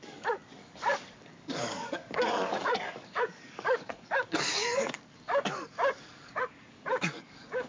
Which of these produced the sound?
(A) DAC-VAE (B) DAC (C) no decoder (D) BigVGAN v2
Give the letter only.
B